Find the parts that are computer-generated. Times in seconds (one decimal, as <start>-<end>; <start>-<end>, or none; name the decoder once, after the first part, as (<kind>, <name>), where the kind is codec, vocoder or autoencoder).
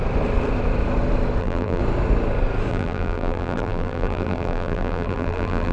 1.4-1.8 (vocoder, BigVGAN v2); 2.7-5.7